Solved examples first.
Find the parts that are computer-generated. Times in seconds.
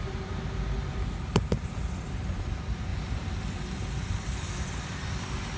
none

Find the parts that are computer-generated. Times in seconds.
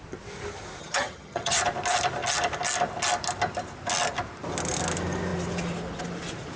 0.8-1.6 (vocoder, HiFi-GAN)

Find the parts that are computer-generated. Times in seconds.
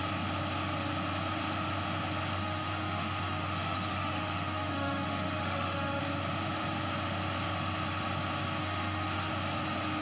2.4-6.0 (autoencoder, DAC-VAE); 8.6-9.3